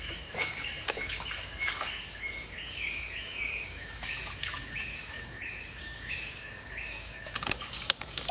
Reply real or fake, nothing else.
fake